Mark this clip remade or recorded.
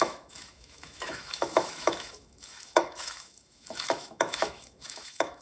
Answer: remade